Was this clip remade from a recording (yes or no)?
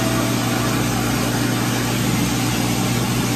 no